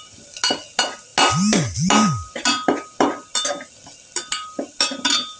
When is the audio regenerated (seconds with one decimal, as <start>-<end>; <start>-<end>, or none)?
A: none